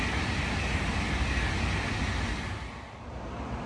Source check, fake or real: real